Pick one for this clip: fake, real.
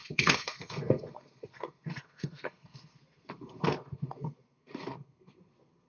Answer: fake